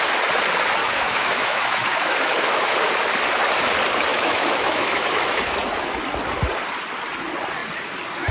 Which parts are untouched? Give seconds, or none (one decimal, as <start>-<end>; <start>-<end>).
0.0-0.8; 2.9-4.1; 5.5-8.3